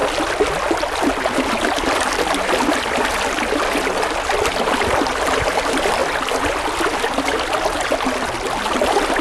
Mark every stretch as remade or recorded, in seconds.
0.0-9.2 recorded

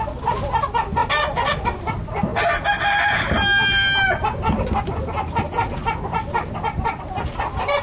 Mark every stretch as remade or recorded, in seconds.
0.0-7.8 recorded

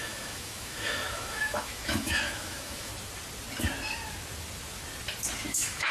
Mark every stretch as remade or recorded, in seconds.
0.0-2.9 remade; 2.9-5.5 recorded; 5.5-5.9 remade

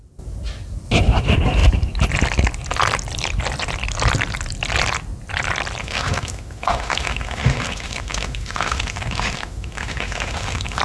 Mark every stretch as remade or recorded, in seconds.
0.0-5.8 recorded; 5.8-10.8 remade

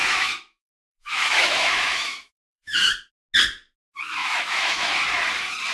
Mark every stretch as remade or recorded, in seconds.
0.0-2.9 remade; 2.9-4.2 recorded; 4.2-4.9 remade; 4.9-5.7 recorded

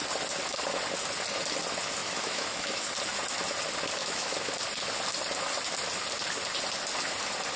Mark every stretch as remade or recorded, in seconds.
0.0-2.0 recorded; 2.0-2.9 remade; 2.9-4.0 recorded; 4.0-4.5 remade; 4.5-7.6 recorded